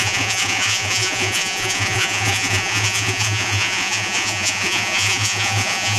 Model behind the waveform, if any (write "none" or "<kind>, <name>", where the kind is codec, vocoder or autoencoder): vocoder, Vocos